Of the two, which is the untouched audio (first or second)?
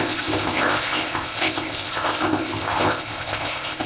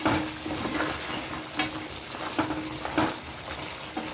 second